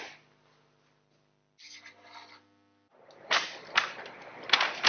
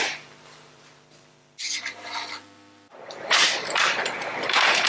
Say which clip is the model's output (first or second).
second